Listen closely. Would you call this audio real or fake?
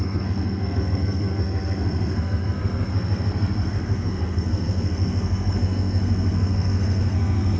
fake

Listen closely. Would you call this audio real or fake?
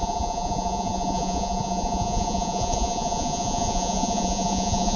fake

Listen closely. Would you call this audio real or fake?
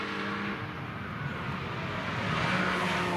real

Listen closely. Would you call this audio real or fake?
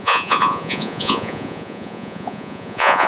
fake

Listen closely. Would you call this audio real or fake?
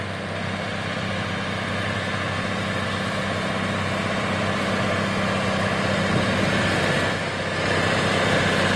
real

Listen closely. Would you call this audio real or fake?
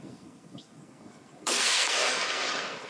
fake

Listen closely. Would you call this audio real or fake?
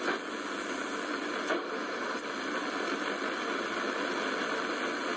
real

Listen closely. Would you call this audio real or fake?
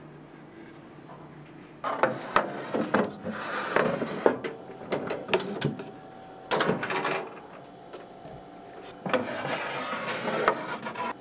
real